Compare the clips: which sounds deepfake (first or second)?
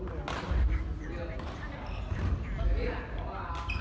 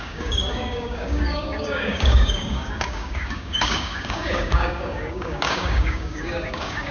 second